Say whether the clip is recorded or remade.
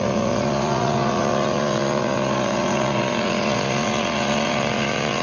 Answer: remade